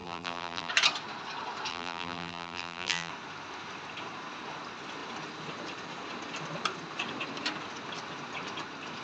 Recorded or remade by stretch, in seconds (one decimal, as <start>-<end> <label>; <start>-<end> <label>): 0.0-0.7 remade; 0.7-1.7 recorded; 1.7-3.1 remade; 3.1-9.0 recorded